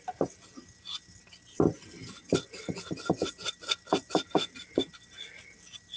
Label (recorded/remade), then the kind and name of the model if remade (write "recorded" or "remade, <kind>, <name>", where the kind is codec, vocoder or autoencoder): recorded